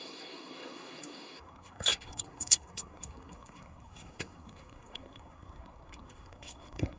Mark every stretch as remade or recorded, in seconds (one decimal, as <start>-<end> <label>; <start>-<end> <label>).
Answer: 0.0-7.0 remade